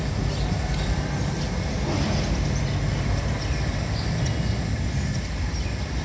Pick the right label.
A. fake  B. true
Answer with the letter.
B